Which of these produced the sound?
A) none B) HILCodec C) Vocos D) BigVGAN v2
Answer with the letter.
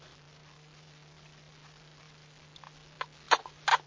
A